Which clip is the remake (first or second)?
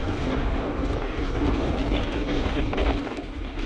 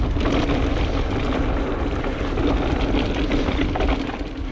first